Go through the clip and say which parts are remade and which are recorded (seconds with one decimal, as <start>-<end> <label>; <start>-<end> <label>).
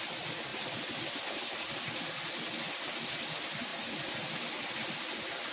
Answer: 0.0-5.5 recorded